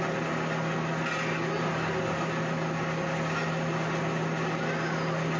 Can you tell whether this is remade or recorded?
recorded